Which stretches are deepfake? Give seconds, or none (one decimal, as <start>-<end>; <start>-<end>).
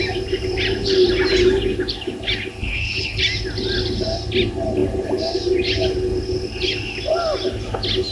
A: 2.6-3.2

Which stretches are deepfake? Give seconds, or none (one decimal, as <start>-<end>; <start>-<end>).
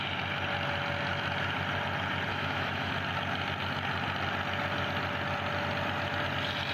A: 2.3-2.9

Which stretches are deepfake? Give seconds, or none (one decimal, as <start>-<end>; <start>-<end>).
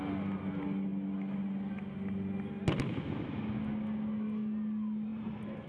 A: 5.1-5.7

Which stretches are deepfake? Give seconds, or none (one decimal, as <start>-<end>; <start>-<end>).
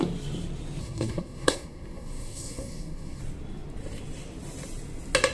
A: 0.8-3.2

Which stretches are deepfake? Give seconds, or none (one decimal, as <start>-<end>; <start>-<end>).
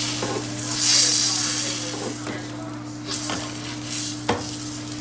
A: none